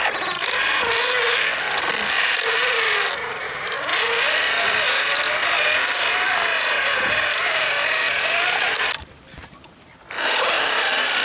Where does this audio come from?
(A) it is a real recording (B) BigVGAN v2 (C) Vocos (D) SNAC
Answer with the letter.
A